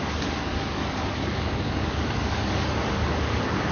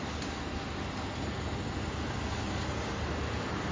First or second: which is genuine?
second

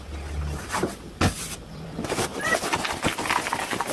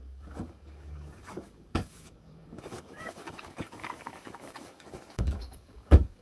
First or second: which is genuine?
first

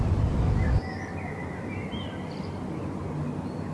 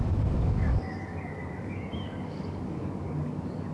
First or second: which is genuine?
first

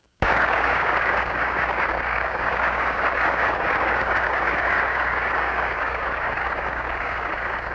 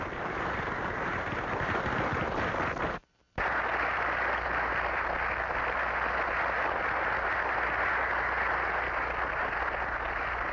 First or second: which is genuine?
second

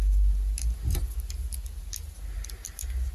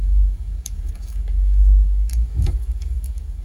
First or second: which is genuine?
first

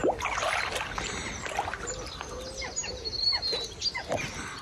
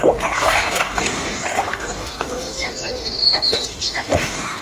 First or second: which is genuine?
first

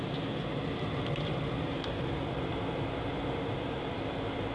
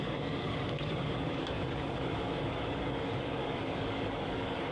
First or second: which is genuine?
first